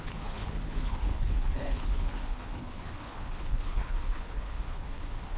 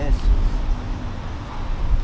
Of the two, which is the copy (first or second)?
first